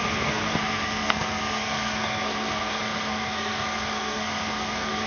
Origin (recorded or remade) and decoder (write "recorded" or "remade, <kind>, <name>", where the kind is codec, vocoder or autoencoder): remade, codec, SNAC